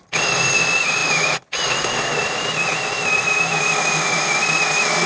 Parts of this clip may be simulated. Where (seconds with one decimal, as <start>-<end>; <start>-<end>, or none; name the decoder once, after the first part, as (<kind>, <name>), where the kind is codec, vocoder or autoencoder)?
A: none